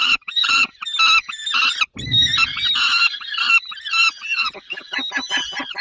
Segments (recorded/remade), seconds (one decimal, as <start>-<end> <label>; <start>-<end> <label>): 0.0-0.7 remade; 0.7-4.2 recorded; 4.2-5.8 remade